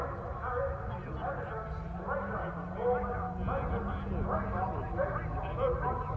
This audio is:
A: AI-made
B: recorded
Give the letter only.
B